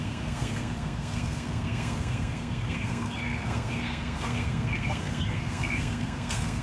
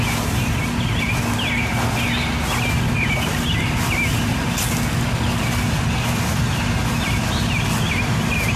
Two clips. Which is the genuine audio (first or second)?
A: second